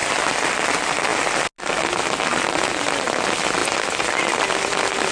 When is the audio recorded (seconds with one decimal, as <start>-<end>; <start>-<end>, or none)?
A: 0.0-5.1